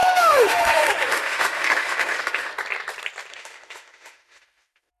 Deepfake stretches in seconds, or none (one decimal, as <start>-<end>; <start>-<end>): 0.0-2.5; 3.3-5.0